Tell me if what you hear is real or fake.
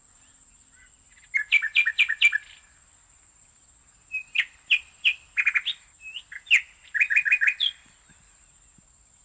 real